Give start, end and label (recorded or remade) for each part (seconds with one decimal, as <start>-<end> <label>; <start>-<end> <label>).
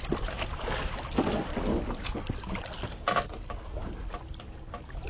0.0-5.1 recorded